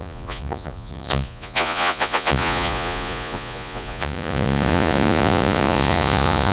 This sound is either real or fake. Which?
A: fake